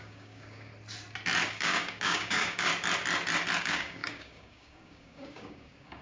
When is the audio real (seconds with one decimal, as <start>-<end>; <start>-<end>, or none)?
0.7-1.5; 2.7-3.6